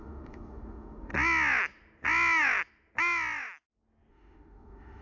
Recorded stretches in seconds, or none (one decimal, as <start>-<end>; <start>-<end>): 1.1-4.1